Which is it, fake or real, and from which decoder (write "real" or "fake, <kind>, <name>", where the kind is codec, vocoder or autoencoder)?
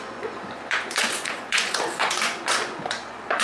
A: fake, vocoder, Vocos